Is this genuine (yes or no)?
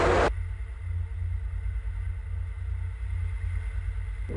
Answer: yes